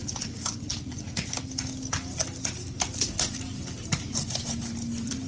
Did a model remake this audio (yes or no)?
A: no